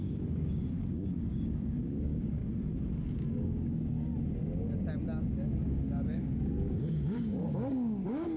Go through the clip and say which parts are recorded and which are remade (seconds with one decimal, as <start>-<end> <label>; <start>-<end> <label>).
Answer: 0.0-2.4 remade; 2.4-3.3 recorded; 3.3-4.1 remade; 4.1-5.2 recorded; 5.2-8.4 remade